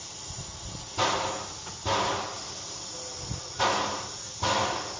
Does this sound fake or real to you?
real